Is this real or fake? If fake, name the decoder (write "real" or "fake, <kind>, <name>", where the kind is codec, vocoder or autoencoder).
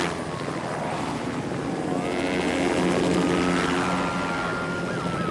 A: real